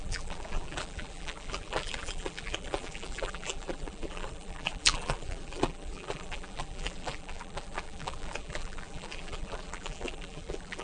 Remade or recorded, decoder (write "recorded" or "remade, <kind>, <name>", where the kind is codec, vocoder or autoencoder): remade, vocoder, BigVGAN v2